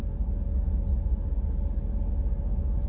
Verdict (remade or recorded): recorded